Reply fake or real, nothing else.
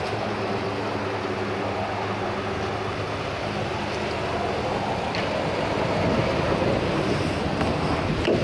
real